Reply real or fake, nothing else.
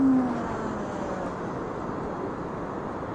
real